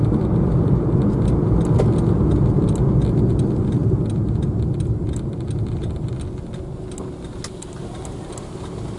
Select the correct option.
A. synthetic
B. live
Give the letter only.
B